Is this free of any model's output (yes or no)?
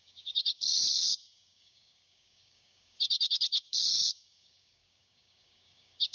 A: no